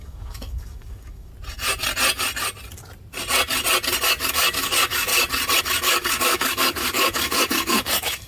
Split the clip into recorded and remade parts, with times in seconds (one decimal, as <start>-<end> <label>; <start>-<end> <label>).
0.0-1.3 remade; 1.3-4.3 recorded; 4.3-5.1 remade; 5.1-5.6 recorded; 5.6-8.3 remade